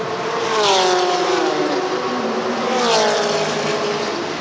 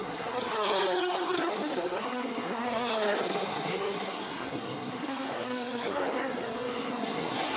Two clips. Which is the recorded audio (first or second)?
first